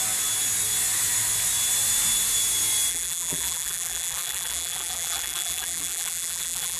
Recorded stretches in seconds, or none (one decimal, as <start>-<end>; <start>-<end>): 0.0-2.9